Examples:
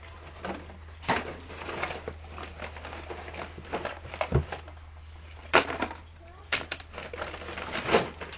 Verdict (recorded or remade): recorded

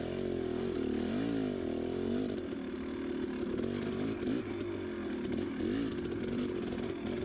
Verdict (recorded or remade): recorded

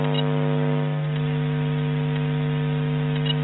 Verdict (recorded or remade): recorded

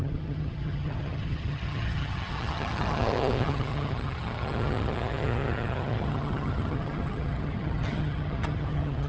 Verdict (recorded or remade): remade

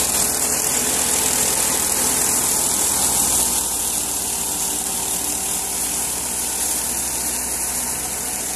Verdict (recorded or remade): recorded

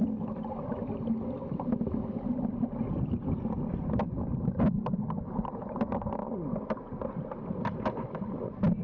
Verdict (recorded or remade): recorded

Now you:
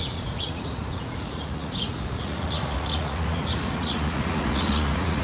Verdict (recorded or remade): remade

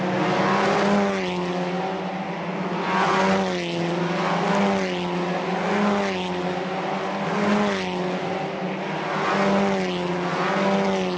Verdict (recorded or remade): recorded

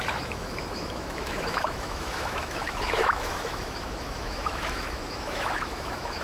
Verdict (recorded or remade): remade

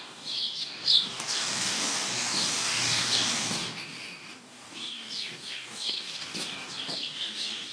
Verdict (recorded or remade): remade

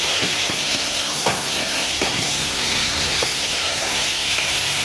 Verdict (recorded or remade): remade